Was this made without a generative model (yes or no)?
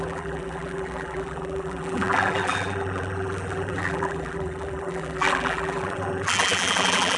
no